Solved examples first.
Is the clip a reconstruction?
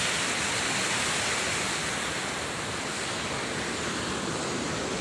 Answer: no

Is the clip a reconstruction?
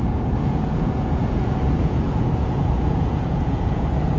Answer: yes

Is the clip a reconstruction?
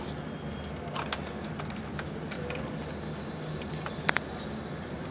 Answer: no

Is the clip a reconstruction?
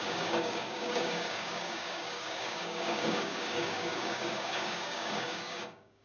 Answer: yes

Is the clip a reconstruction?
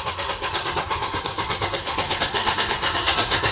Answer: yes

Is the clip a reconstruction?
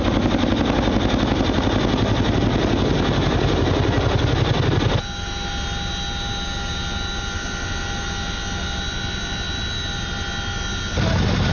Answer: no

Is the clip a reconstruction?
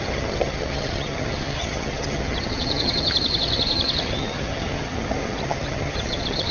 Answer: yes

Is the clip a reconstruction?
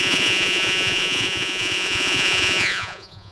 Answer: yes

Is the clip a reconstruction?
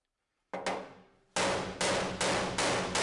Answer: no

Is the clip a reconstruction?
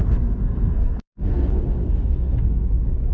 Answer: yes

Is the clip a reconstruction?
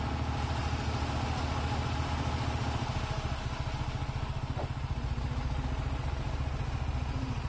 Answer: no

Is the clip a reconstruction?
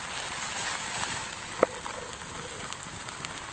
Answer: no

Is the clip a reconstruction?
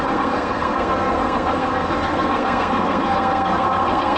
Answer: yes